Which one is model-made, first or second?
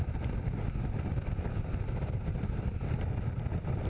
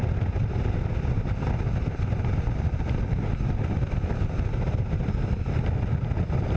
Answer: first